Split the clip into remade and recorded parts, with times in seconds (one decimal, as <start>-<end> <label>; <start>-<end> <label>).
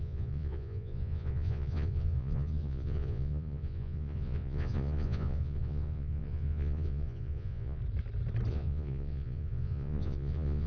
0.0-7.8 remade; 7.8-8.5 recorded; 8.5-10.7 remade